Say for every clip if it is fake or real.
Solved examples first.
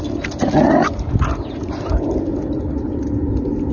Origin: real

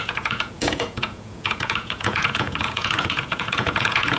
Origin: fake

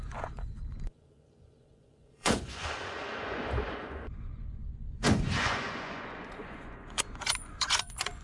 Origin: fake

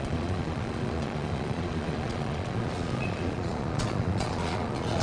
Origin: fake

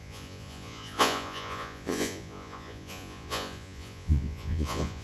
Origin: fake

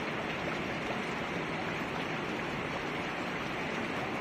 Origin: real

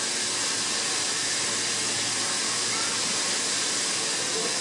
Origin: real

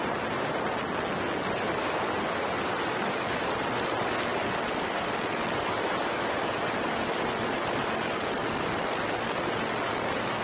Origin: real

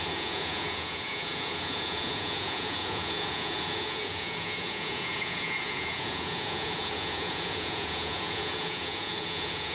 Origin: fake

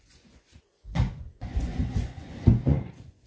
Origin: fake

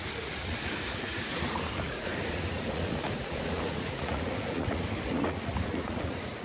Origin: fake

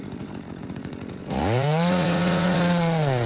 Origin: fake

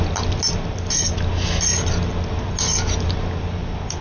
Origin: real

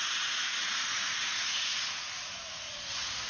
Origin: fake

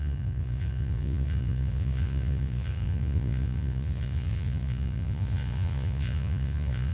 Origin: fake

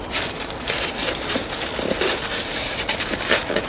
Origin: real